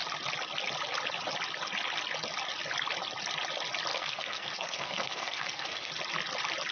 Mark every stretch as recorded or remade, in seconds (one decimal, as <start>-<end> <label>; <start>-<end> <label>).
0.0-3.9 recorded; 3.9-5.9 remade; 5.9-6.7 recorded